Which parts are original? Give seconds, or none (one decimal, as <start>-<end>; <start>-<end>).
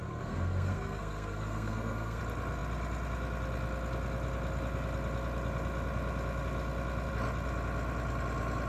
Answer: 2.2-8.7